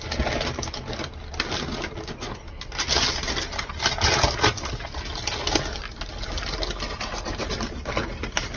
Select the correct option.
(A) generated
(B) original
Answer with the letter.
B